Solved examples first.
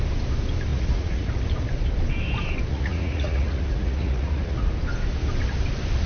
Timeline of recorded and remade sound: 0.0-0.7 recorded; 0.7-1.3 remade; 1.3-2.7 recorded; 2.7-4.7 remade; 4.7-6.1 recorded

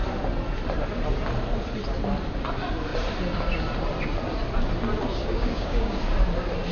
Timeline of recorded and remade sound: 0.0-5.2 recorded; 5.2-6.0 remade; 6.0-6.7 recorded

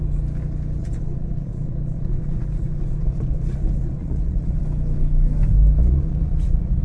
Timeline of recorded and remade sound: 0.0-0.8 recorded; 0.8-4.6 remade; 4.6-5.8 recorded; 5.8-6.8 remade

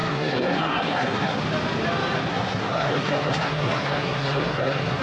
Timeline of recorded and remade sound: 0.0-1.4 remade; 1.4-2.3 recorded; 2.3-5.0 remade